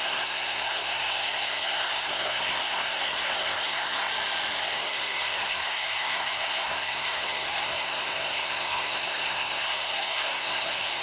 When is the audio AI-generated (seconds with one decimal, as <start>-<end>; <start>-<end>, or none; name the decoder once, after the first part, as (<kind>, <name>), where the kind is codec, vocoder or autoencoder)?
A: 0.0-4.1 (codec, SNAC); 4.6-11.0